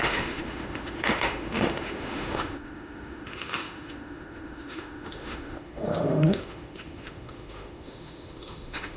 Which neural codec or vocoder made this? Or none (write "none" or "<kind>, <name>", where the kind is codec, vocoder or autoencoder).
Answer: autoencoder, DAC-VAE